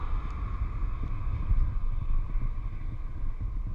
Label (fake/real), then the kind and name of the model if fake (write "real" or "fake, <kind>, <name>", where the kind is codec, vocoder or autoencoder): real